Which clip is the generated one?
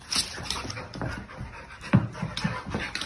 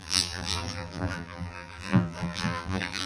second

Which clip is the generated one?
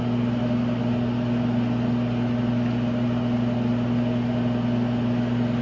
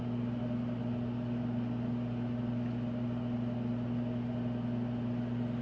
second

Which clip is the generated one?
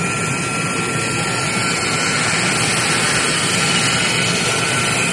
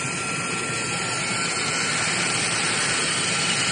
second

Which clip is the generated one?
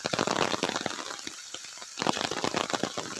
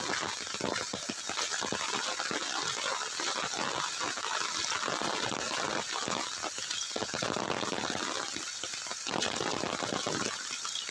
first